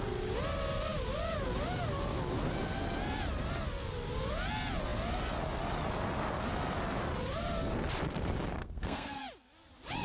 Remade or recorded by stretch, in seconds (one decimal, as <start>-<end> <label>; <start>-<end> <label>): 0.0-8.6 recorded; 8.6-9.2 remade; 9.2-10.0 recorded